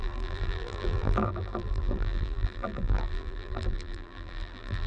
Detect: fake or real fake